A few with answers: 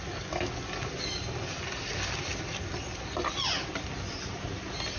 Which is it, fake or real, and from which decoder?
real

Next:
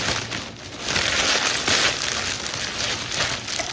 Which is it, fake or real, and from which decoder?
real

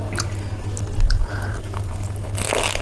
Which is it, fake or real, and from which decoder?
real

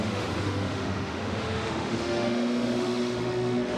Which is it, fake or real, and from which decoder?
fake, autoencoder, DAC-VAE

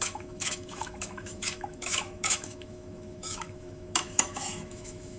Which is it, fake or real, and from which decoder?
fake, autoencoder, DAC-VAE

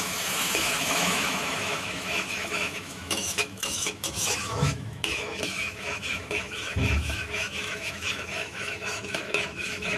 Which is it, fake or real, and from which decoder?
fake, autoencoder, DAC-VAE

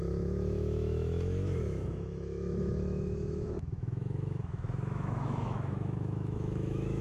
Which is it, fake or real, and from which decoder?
fake, autoencoder, DAC-VAE